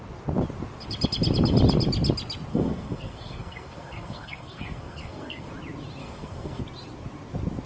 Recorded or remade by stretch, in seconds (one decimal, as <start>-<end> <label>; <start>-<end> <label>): 0.0-2.5 recorded; 2.5-5.5 remade; 5.5-6.0 recorded; 6.0-6.6 remade; 6.6-7.7 recorded